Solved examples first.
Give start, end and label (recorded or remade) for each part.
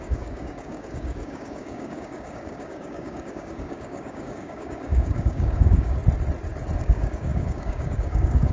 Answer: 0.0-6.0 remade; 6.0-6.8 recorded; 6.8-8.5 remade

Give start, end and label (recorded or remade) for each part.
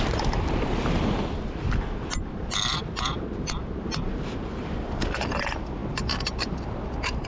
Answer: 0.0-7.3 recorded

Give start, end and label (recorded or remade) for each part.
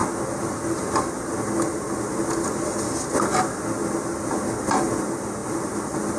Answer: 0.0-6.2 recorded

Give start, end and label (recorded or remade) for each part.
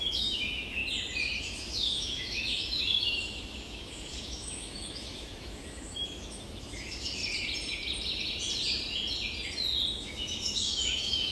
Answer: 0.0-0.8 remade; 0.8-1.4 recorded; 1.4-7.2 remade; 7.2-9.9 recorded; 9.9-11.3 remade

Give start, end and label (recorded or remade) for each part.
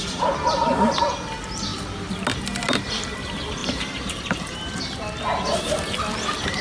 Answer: 0.0-3.6 recorded; 3.6-4.8 remade; 4.8-6.6 recorded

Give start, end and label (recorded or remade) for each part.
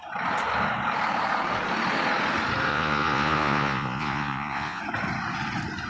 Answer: 0.0-2.7 recorded; 2.7-4.8 remade; 4.8-5.9 recorded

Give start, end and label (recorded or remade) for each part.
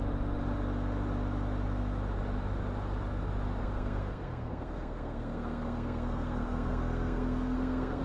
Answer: 0.0-3.6 recorded; 3.6-8.0 remade